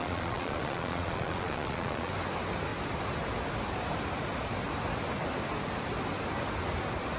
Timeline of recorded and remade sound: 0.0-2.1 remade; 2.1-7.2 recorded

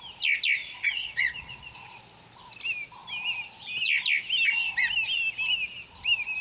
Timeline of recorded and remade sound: 0.0-0.6 recorded; 0.6-2.0 remade; 2.0-6.4 recorded